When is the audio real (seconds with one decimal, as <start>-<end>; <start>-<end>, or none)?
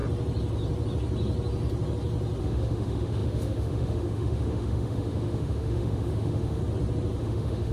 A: 0.0-2.4; 6.6-7.2